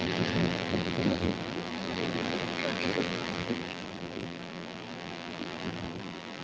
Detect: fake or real fake